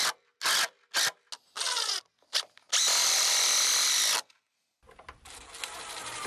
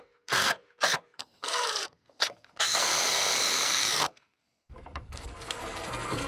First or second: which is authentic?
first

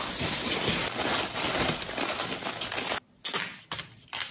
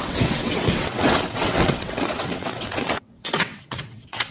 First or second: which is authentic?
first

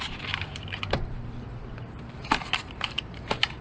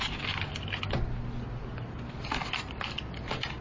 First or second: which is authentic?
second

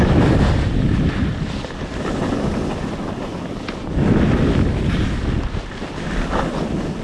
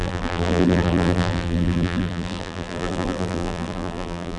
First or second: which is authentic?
first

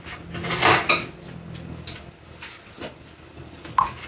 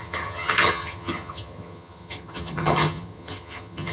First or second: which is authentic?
first